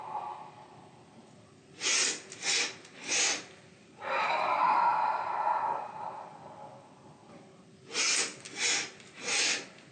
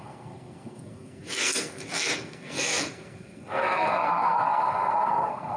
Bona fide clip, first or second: first